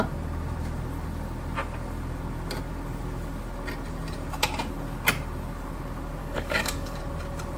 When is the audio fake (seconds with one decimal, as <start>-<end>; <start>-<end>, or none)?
6.2-7.0

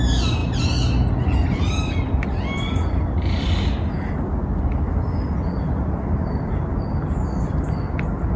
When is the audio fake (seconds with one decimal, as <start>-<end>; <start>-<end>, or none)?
none